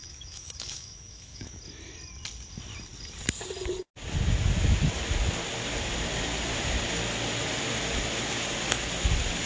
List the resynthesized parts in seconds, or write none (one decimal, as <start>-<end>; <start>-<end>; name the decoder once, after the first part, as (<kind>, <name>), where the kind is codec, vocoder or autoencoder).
0.0-1.6 (autoencoder, DAC-VAE)